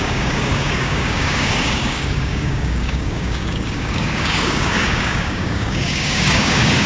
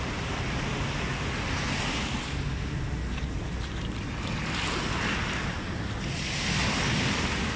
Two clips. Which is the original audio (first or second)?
second